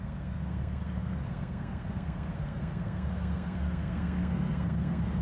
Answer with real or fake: fake